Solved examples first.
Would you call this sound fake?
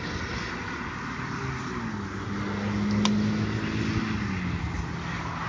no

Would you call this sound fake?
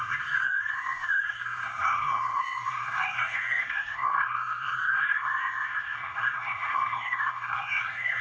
yes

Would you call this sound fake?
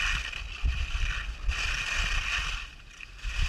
no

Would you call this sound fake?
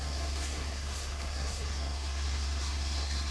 yes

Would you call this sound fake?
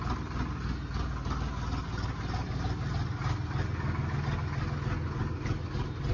no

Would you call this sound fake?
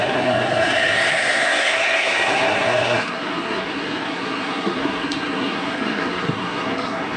yes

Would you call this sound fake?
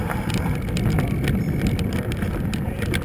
no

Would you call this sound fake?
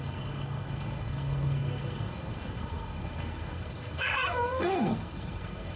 yes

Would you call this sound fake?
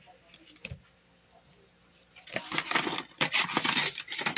no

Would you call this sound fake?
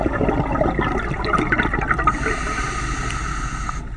no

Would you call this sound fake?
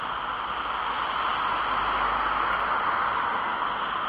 no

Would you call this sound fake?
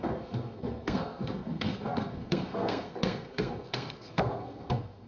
yes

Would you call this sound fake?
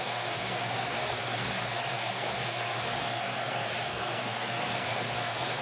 yes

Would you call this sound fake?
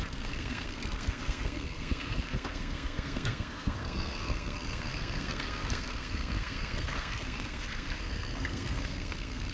yes